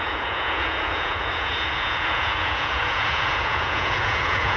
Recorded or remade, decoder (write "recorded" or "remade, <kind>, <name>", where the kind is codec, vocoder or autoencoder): remade, vocoder, Vocos